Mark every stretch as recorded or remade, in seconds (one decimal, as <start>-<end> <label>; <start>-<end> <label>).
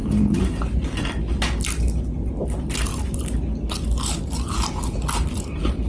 0.0-1.2 remade; 1.2-5.9 recorded